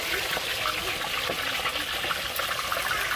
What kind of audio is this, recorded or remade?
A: recorded